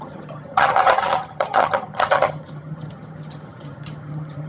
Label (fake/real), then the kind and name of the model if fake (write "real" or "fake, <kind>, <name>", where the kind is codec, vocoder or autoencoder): fake, vocoder, HiFi-GAN